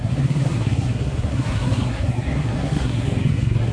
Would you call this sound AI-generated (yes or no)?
yes